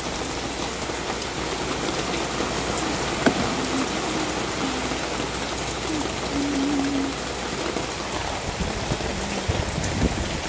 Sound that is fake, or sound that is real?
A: real